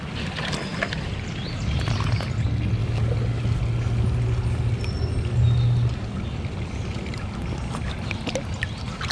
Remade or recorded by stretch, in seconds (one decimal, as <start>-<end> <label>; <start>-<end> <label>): 0.0-9.1 recorded